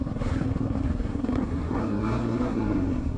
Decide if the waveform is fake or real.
fake